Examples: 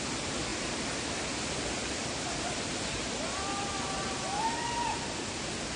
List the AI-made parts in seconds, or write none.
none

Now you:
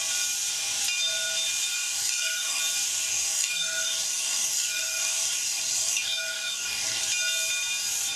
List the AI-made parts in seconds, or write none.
1.7-2.6; 3.1-7.0

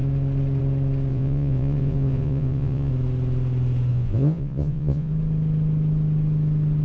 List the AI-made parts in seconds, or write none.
1.1-2.9; 3.9-5.1